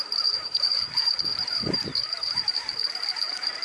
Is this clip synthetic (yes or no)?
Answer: yes